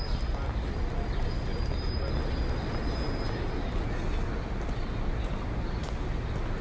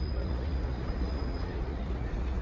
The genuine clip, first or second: first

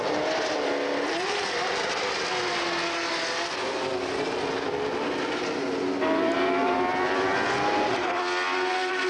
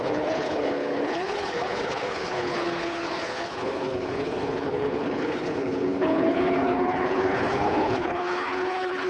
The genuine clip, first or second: first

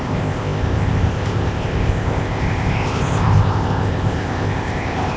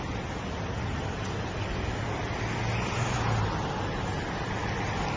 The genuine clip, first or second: second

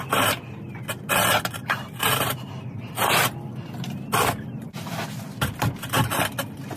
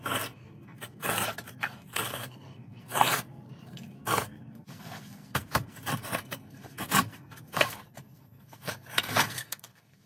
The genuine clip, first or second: first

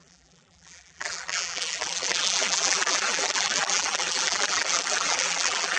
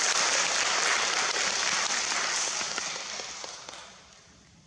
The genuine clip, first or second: second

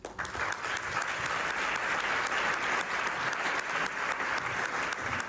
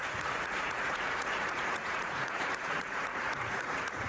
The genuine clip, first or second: first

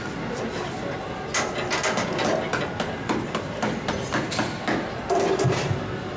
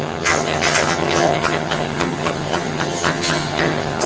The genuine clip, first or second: first